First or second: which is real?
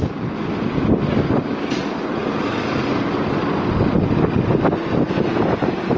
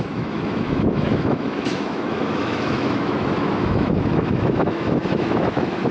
first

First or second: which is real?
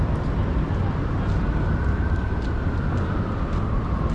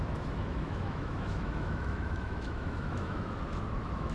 first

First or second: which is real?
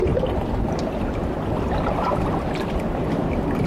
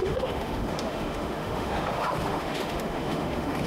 first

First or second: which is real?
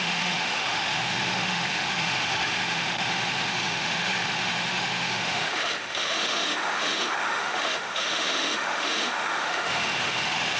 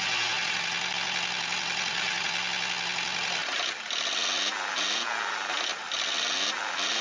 second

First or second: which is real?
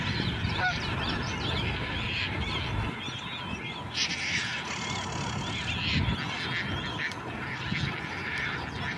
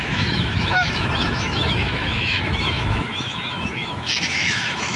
first